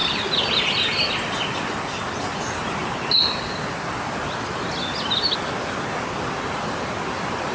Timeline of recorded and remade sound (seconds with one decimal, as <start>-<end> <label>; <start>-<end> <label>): 0.0-7.5 recorded